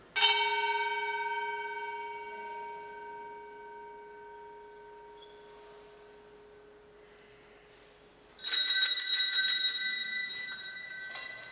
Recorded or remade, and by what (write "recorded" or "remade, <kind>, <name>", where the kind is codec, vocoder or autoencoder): recorded